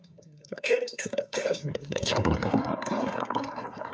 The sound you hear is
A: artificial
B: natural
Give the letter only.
A